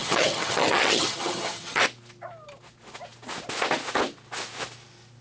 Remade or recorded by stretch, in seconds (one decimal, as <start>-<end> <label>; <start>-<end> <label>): 0.0-1.8 remade; 1.8-5.2 recorded